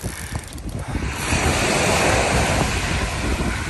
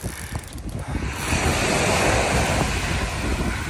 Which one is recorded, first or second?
second